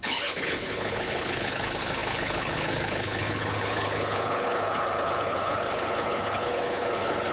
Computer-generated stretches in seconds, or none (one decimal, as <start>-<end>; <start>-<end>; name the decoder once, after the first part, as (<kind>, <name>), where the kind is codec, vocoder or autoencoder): 0.0-7.3 (codec, HILCodec)